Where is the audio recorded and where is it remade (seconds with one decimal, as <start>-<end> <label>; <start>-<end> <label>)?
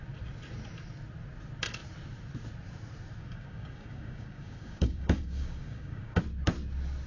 0.0-3.2 recorded; 3.2-6.2 remade; 6.2-7.1 recorded